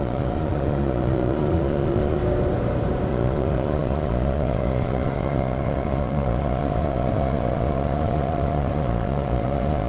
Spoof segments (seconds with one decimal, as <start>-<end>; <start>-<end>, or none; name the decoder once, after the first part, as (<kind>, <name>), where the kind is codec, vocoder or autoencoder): 0.0-2.2 (vocoder, Vocos); 3.1-9.9